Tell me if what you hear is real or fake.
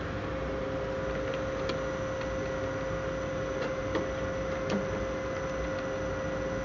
real